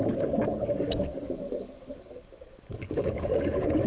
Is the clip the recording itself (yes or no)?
no